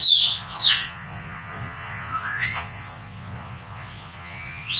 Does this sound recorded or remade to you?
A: remade